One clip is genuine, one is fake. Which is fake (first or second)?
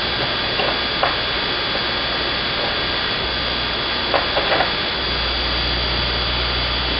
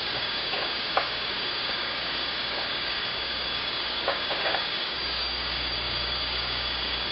second